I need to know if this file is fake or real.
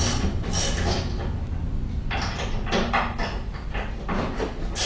real